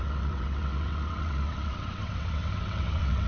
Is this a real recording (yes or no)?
no